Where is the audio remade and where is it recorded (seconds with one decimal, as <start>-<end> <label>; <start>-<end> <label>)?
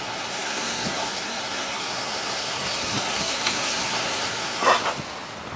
0.0-4.8 remade; 4.8-5.6 recorded